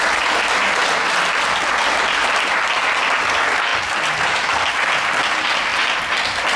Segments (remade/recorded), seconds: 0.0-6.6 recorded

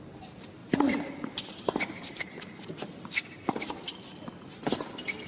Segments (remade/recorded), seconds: 0.0-0.6 recorded; 0.6-3.8 remade; 3.8-5.3 recorded

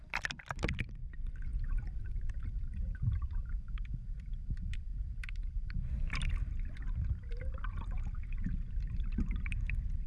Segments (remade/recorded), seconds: 0.0-1.5 recorded; 1.5-3.7 remade; 3.7-4.9 recorded; 4.9-6.3 remade; 6.3-7.7 recorded; 7.7-9.2 remade; 9.2-10.1 recorded

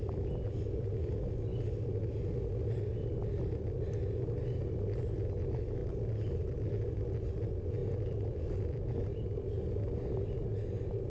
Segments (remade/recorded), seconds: 0.0-5.8 recorded; 5.8-7.1 remade; 7.1-7.8 recorded; 7.8-9.6 remade; 9.6-11.1 recorded

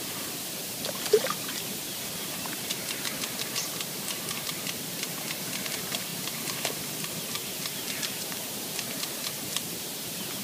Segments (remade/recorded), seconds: 0.0-10.4 remade

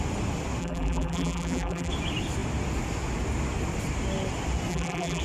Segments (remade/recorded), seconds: 0.0-0.6 recorded; 0.6-1.9 remade; 1.9-4.7 recorded; 4.7-5.2 remade

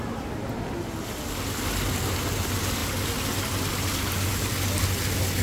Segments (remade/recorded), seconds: 0.0-5.4 recorded